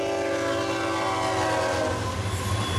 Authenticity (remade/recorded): recorded